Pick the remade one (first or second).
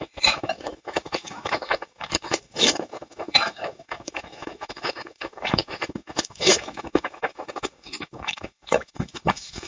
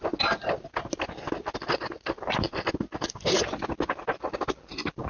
first